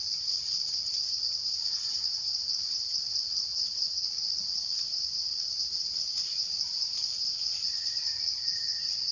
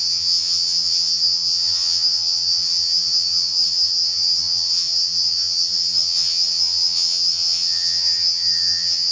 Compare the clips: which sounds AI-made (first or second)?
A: second